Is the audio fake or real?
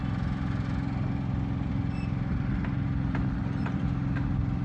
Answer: real